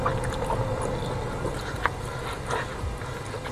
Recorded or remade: recorded